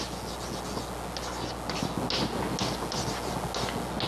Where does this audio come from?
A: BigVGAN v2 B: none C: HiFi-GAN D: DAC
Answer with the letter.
B